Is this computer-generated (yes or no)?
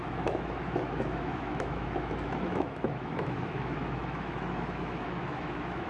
yes